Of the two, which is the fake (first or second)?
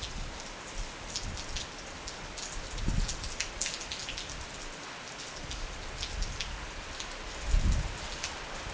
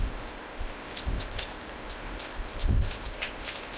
second